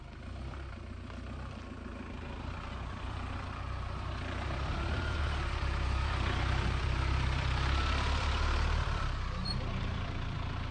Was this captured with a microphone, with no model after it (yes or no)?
no